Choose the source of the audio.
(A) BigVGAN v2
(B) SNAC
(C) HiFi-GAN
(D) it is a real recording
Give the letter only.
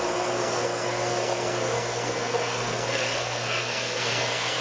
B